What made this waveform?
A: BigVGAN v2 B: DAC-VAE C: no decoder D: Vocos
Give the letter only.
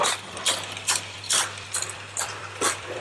A